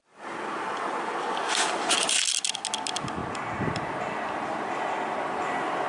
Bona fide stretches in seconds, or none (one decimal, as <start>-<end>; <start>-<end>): 0.0-5.9